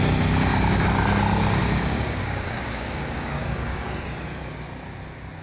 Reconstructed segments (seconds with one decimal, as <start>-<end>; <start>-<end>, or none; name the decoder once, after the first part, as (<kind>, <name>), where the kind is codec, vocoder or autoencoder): 1.6-3.8 (codec, DAC)